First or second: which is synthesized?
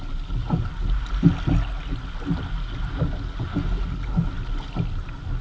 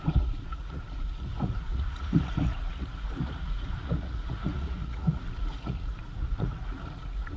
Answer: second